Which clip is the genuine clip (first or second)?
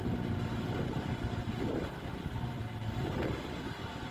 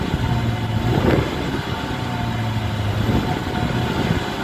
second